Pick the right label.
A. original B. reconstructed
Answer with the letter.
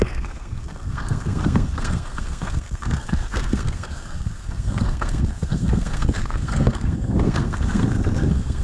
B